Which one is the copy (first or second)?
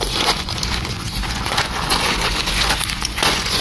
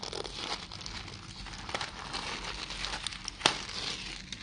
first